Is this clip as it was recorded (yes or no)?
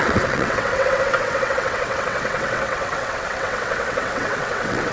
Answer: no